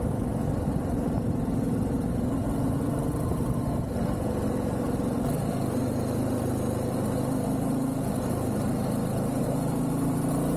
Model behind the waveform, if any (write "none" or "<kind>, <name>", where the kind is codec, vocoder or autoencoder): none